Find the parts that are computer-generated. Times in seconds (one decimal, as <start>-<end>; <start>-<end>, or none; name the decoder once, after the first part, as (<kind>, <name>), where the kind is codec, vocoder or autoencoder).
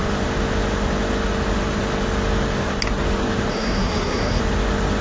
3.5-4.4 (codec, SNAC)